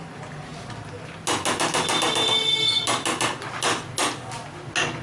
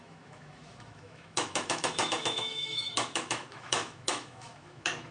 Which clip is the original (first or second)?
first